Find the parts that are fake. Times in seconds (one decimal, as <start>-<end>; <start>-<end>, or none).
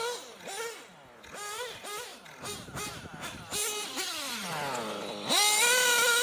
none